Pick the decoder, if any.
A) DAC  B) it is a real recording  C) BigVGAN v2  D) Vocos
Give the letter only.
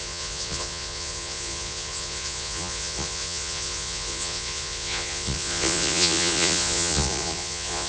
D